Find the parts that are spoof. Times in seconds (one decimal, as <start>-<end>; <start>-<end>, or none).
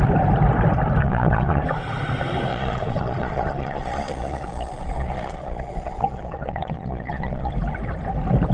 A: 1.0-1.6; 2.5-7.5